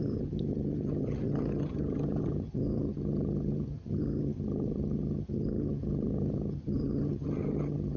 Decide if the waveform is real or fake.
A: fake